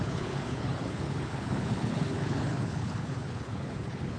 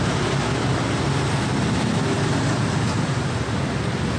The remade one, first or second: first